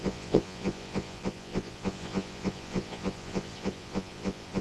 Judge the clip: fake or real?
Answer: fake